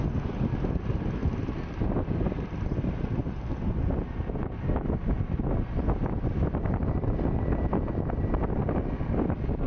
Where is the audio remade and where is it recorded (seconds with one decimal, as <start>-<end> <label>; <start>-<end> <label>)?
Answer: 0.0-9.7 recorded